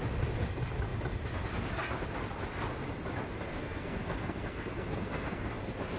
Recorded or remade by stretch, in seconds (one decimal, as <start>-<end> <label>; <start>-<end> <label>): 0.0-3.5 recorded; 3.5-5.5 remade; 5.5-6.0 recorded